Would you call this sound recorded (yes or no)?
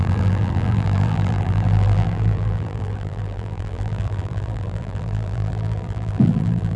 no